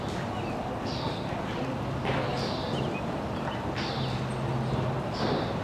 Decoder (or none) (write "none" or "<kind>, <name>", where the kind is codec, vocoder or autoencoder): none